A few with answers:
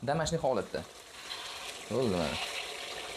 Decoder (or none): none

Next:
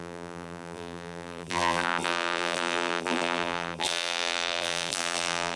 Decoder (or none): vocoder, BigVGAN v2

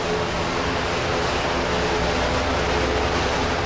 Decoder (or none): none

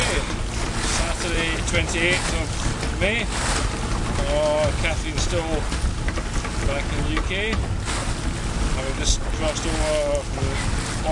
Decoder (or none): none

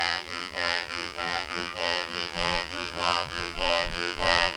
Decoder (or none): vocoder, BigVGAN v2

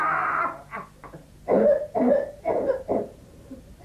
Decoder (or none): vocoder, BigVGAN v2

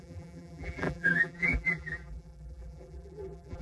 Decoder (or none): vocoder, BigVGAN v2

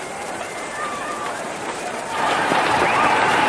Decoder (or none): vocoder, BigVGAN v2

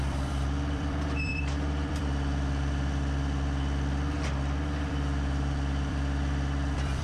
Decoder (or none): vocoder, BigVGAN v2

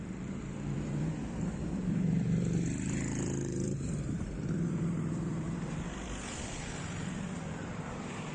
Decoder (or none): vocoder, BigVGAN v2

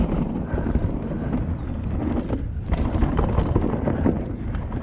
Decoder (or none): none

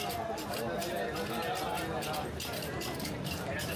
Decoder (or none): none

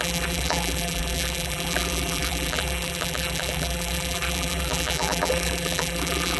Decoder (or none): vocoder, BigVGAN v2